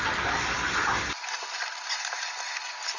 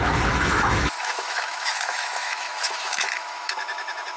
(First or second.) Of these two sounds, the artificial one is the second